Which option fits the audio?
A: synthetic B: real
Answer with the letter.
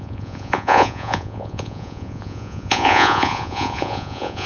A